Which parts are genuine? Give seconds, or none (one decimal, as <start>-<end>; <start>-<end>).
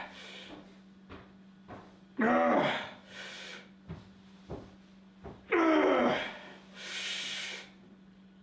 0.0-8.4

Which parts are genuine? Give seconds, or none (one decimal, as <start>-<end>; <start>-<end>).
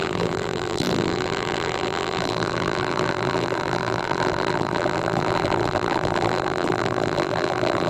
none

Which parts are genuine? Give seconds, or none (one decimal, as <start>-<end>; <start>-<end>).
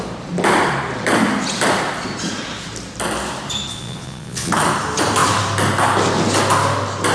0.0-3.7; 4.5-7.1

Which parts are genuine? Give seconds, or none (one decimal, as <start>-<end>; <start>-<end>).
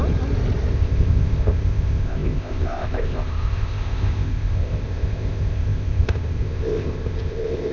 0.0-0.7